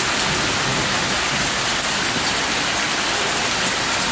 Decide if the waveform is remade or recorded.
recorded